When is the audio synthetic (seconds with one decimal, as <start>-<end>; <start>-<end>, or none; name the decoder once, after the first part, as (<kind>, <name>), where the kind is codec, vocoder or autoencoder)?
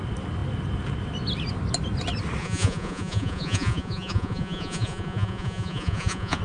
2.4-6.4 (vocoder, Vocos)